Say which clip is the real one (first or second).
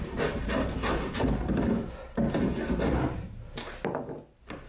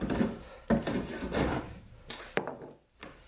first